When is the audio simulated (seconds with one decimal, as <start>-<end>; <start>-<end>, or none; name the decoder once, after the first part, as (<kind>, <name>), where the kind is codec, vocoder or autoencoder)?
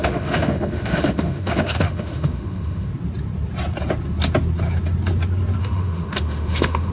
0.0-2.9 (autoencoder, DAC-VAE); 5.6-6.9